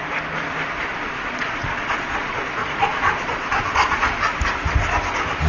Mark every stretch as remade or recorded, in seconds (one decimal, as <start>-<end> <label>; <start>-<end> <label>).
0.0-0.9 recorded; 0.9-4.2 remade; 4.2-5.5 recorded